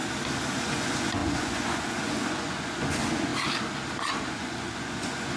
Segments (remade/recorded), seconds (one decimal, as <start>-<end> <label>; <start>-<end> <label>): 0.0-0.6 recorded; 0.6-3.3 remade; 3.3-4.3 recorded; 4.3-5.4 remade